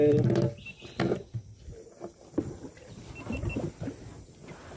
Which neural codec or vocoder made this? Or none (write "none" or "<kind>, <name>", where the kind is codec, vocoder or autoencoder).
none